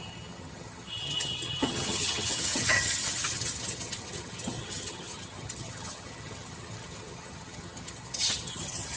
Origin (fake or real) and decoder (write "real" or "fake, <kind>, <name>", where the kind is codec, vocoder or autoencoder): fake, vocoder, HiFi-GAN